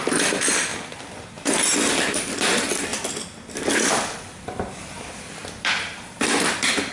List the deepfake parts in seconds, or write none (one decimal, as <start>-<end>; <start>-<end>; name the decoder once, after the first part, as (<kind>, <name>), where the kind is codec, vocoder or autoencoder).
0.0-2.9 (vocoder, BigVGAN v2); 3.7-6.9